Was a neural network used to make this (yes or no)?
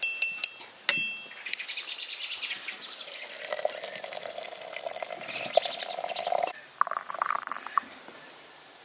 no